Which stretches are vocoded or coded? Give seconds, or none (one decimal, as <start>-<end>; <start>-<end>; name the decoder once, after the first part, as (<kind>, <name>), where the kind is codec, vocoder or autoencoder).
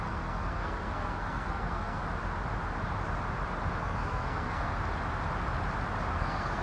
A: 0.0-2.0 (codec, SNAC); 3.8-4.7; 6.1-6.6